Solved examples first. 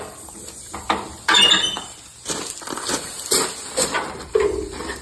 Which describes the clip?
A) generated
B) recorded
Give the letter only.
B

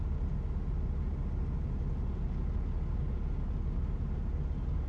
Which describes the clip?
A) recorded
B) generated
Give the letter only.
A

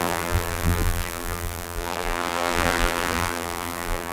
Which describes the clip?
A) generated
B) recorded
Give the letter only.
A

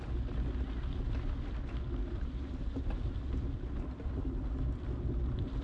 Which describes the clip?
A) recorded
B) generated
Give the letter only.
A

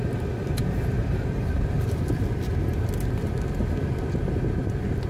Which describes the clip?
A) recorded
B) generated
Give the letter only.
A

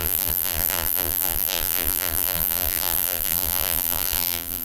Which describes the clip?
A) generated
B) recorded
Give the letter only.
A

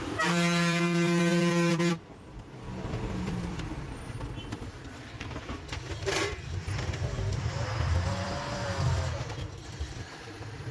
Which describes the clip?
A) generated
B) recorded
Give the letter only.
A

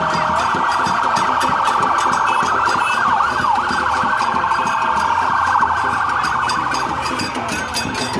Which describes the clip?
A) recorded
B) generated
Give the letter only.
A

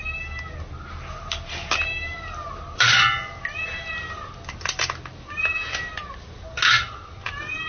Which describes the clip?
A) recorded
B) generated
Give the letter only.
A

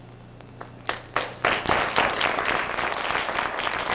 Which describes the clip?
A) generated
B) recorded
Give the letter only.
B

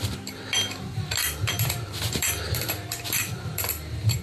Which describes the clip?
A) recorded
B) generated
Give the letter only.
B